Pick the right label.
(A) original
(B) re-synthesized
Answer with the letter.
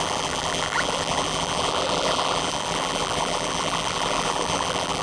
B